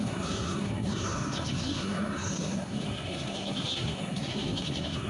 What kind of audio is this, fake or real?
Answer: fake